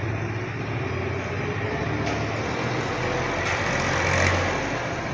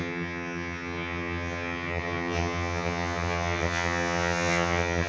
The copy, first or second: second